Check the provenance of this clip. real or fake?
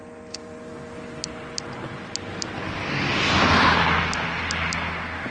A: real